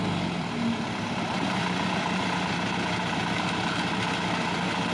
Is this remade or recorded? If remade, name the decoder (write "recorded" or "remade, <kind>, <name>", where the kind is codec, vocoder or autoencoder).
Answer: recorded